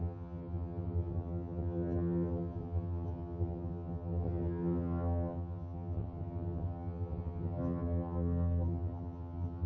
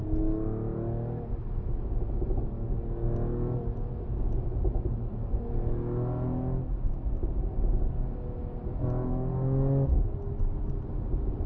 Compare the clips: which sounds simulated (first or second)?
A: first